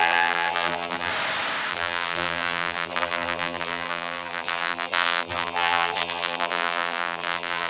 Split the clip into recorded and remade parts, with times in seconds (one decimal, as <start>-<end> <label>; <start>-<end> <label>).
0.0-1.1 remade; 1.1-1.7 recorded; 1.7-7.7 remade